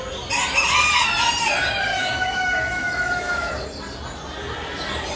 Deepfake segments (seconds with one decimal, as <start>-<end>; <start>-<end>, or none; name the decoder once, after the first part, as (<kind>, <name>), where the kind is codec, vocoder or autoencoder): 1.9-3.5 (autoencoder, DAC-VAE)